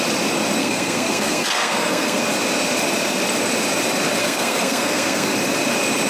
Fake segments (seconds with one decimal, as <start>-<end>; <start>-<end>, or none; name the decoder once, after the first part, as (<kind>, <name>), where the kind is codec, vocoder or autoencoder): 0.6-2.2 (codec, SNAC); 4.2-5.3

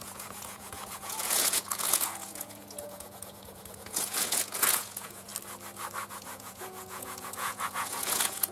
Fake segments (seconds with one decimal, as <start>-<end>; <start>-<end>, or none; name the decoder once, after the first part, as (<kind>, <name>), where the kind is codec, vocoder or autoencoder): 0.0-5.3 (vocoder, Vocos); 6.1-8.5

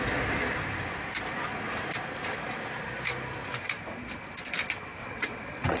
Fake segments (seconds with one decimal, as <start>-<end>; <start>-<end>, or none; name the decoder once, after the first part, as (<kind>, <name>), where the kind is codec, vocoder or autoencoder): 5.0-5.8 (vocoder, WaveNeXt)

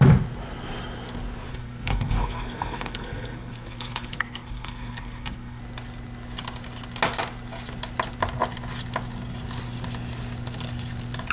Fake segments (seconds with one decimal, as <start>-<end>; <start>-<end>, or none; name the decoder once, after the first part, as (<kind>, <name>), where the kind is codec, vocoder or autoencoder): 1.5-5.6 (codec, SNAC)

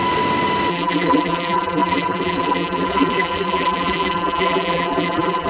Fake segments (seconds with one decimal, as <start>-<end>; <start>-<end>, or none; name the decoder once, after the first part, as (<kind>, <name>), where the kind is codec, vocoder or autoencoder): 0.7-5.5 (vocoder, BigVGAN v2)